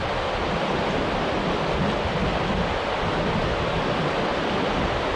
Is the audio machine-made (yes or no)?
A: no